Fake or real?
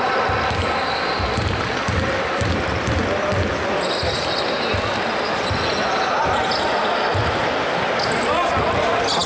real